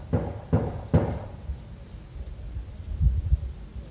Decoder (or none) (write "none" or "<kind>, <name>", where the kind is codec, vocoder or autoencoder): none